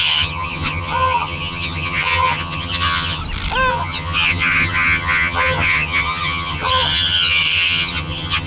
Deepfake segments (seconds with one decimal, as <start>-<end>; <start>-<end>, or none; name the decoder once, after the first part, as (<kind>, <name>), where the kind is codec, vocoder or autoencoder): 0.0-3.2 (vocoder, HiFi-GAN); 3.7-8.5